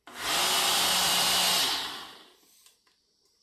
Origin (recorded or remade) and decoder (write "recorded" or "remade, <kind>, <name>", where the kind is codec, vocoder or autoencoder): recorded